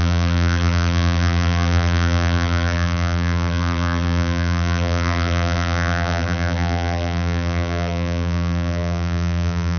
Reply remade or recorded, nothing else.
remade